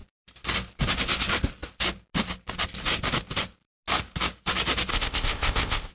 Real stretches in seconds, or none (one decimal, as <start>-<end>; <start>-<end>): 0.0-4.9